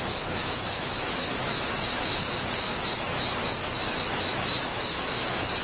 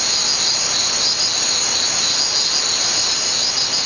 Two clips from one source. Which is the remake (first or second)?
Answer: first